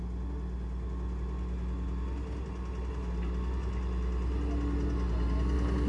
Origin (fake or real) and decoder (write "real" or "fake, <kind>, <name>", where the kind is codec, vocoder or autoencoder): real